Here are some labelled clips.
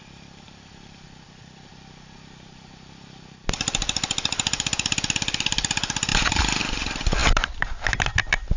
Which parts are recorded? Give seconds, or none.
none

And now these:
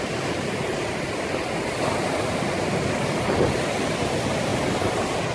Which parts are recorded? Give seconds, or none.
0.0-5.3